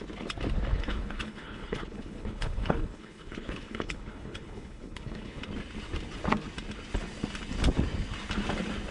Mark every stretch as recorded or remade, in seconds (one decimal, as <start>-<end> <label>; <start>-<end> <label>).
0.0-0.7 recorded; 0.7-5.4 remade; 5.4-8.9 recorded